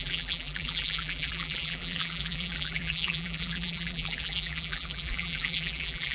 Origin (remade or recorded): remade